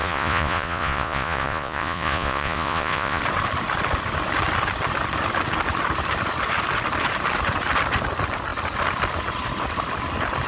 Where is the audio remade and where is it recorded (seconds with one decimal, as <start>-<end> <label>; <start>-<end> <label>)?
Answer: 0.0-3.2 remade; 3.2-10.5 recorded

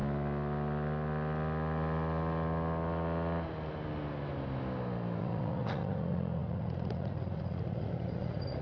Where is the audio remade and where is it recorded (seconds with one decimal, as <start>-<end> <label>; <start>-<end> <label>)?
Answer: 0.0-5.2 recorded; 5.2-8.6 remade

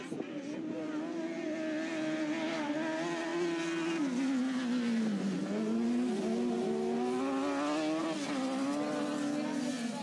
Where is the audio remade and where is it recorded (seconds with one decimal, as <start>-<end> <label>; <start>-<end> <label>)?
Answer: 0.0-10.0 recorded

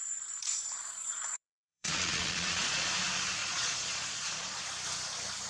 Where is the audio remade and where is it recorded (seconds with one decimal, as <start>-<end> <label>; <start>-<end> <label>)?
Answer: 0.0-0.8 recorded; 0.8-2.9 remade; 2.9-3.4 recorded; 3.4-4.6 remade; 4.6-5.5 recorded

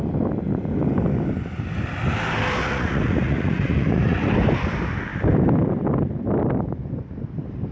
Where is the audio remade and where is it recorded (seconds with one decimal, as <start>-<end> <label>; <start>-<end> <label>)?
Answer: 0.0-2.6 recorded; 2.6-4.3 remade; 4.3-7.7 recorded

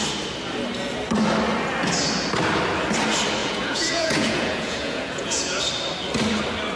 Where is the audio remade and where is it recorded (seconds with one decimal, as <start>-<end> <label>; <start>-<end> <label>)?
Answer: 0.0-3.4 recorded; 3.4-5.6 remade; 5.6-6.8 recorded